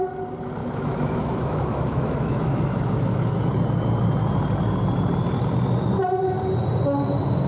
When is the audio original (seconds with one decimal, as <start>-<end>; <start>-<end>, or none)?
0.0-0.6; 3.3-7.5